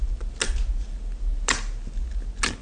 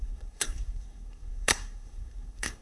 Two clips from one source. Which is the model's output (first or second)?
second